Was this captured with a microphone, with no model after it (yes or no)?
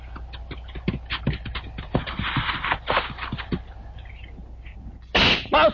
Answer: yes